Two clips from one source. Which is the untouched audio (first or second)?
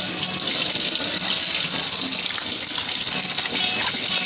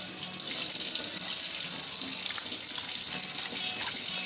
second